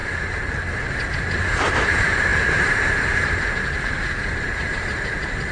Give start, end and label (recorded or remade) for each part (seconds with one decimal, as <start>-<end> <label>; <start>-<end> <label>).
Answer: 0.0-1.1 recorded; 1.1-5.5 remade